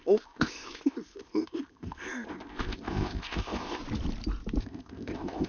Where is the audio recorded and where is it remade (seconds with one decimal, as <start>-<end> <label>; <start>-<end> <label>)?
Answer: 0.0-3.8 remade; 3.8-4.6 recorded; 4.6-5.5 remade